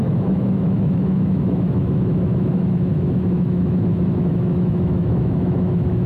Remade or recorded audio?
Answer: remade